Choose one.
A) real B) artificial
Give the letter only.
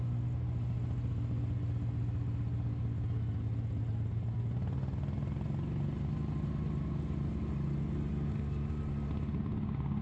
A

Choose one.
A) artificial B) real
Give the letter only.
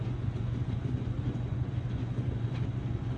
A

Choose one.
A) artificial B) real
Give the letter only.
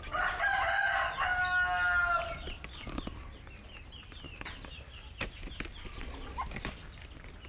B